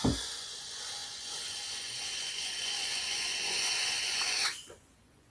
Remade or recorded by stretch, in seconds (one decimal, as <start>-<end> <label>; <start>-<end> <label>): 0.0-5.3 remade